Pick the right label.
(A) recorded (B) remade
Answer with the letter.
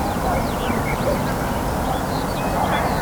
A